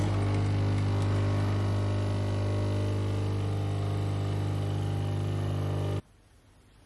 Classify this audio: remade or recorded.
recorded